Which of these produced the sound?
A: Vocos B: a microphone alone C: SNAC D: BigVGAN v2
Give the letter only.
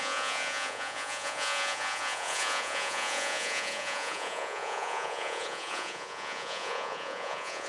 A